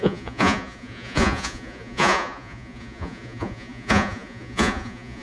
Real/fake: fake